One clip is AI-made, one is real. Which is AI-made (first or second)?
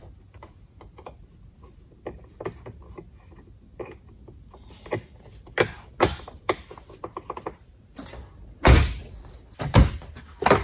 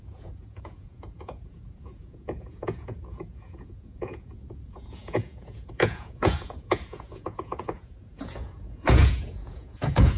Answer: second